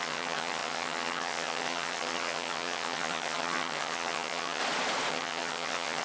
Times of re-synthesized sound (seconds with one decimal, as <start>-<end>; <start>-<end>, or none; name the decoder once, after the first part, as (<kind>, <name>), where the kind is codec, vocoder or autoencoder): 0.0-4.6 (vocoder, HiFi-GAN); 5.1-6.0